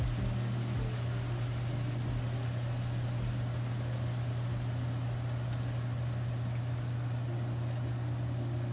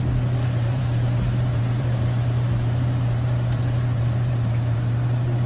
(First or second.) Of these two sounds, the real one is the first